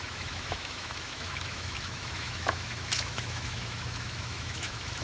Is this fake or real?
fake